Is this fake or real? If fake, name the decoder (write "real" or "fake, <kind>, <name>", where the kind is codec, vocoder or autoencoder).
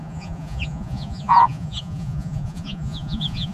fake, vocoder, Vocos